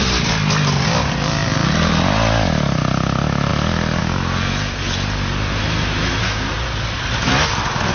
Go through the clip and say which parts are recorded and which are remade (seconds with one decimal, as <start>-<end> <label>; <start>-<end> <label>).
0.0-7.9 recorded